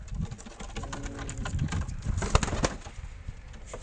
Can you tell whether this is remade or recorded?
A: recorded